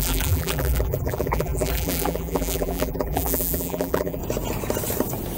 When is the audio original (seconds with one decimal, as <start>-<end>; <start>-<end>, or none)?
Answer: 4.2-5.4